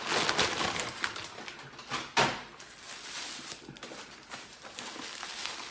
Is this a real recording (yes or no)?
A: yes